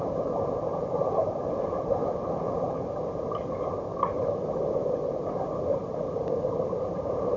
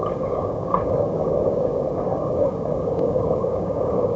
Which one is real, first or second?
first